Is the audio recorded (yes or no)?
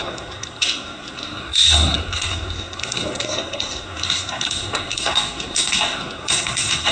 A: no